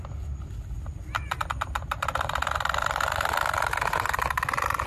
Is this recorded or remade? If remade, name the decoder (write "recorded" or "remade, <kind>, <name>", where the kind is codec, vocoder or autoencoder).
recorded